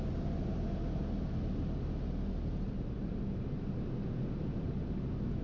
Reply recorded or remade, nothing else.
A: recorded